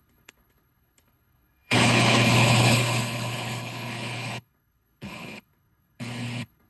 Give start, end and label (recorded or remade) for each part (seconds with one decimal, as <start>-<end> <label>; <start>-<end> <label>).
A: 0.0-6.7 remade